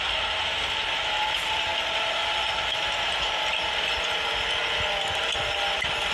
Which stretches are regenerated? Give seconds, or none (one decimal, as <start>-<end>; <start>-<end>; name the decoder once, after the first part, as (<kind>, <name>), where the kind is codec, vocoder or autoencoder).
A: none